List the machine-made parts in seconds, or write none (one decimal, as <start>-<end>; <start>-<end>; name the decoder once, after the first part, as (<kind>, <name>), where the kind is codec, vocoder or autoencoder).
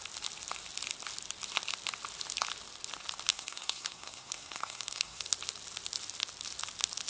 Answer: 3.3-5.2 (codec, SNAC)